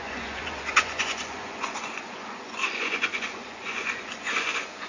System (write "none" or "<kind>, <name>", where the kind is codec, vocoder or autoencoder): vocoder, Vocos